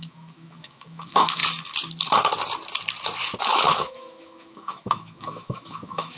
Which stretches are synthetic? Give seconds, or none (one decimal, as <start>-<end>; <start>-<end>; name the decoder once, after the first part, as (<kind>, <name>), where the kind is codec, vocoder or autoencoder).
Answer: 0.0-1.4 (autoencoder, DAC-VAE); 3.4-6.2